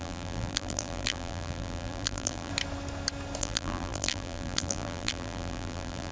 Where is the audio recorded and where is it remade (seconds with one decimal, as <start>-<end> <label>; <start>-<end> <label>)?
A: 0.0-2.5 remade; 2.5-3.4 recorded; 3.4-6.1 remade